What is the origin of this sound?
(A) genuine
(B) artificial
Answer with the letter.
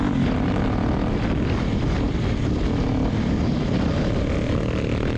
A